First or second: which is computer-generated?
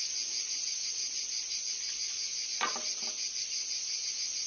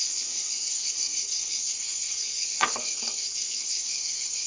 second